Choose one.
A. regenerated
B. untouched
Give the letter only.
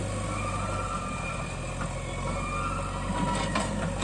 B